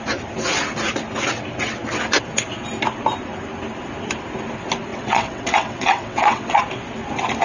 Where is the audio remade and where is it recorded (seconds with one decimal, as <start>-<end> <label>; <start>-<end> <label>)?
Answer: 0.0-4.9 recorded; 4.9-6.6 remade; 6.6-7.4 recorded